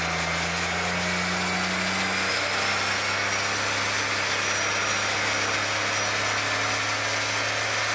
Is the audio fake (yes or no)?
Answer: no